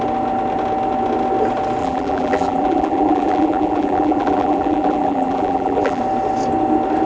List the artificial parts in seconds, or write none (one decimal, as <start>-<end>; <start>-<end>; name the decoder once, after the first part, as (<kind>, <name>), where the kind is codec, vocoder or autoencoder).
1.8-6.0 (vocoder, BigVGAN v2)